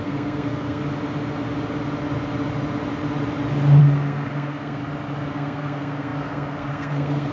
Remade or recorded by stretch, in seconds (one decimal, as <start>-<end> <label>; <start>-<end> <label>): 0.0-0.8 remade; 0.8-3.8 recorded; 3.8-4.8 remade; 4.8-5.3 recorded; 5.3-7.3 remade